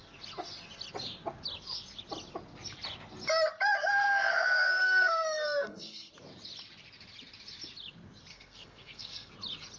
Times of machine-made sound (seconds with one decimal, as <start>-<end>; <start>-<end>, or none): 3.8-6.1; 8.3-9.3